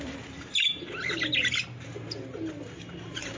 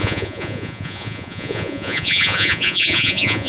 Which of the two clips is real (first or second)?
first